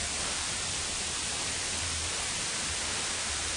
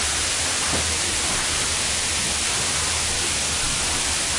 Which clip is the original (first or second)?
second